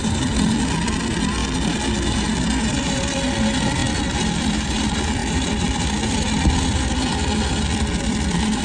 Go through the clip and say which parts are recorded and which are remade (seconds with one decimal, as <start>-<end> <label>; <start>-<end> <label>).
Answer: 0.0-1.4 remade; 1.4-2.6 recorded; 2.6-3.8 remade; 3.8-4.3 recorded; 4.3-8.6 remade